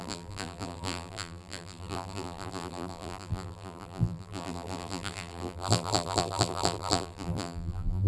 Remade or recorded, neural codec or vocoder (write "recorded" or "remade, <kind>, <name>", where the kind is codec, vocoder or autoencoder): remade, vocoder, BigVGAN v2